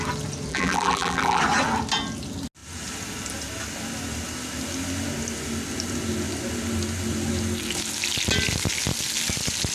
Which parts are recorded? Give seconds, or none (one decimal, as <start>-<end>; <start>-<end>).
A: 0.0-0.5; 1.4-9.7